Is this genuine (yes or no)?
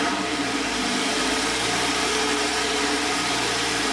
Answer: no